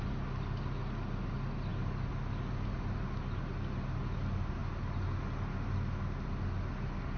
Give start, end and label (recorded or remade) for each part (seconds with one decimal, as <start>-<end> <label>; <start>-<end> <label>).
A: 0.0-7.2 recorded